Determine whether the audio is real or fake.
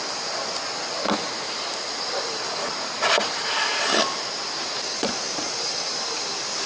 real